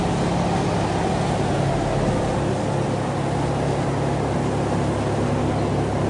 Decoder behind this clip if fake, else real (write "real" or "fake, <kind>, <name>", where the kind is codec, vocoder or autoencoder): real